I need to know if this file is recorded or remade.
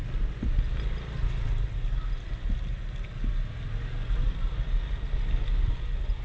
recorded